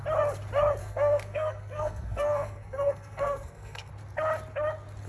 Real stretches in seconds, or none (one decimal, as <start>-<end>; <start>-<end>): 0.0-0.8; 3.9-5.1